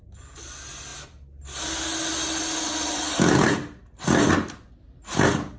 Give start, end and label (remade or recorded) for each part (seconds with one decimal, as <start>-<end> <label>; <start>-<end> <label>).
0.0-5.6 recorded